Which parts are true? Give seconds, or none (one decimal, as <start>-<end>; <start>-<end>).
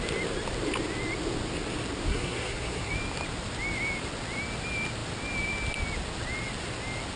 0.0-2.1; 2.9-7.2